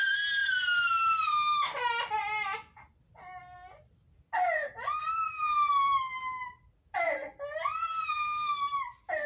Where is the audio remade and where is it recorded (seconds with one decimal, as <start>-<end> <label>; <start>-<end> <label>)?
0.0-9.3 recorded